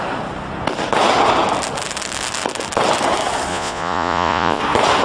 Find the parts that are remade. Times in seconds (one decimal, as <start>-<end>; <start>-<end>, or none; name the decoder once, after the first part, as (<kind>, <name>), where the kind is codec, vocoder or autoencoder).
3.5-4.6 (vocoder, Vocos)